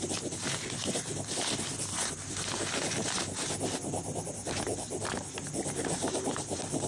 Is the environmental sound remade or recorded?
recorded